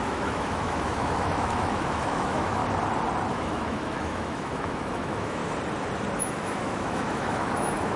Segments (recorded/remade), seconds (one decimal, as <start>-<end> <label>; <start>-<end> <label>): 0.0-2.6 remade; 2.6-3.3 recorded; 3.3-5.4 remade; 5.4-6.2 recorded; 6.2-8.0 remade